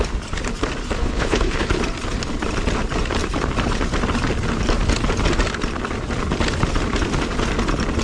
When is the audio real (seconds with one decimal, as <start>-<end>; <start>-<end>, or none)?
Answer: 0.0-1.0; 1.7-8.0

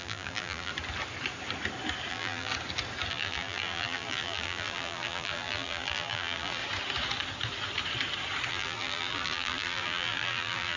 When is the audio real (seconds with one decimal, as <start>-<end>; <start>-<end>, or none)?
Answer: 0.7-2.1; 2.5-3.1; 6.6-8.5